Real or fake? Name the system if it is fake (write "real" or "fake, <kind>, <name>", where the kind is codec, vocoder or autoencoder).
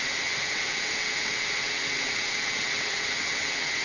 fake, vocoder, WaveNeXt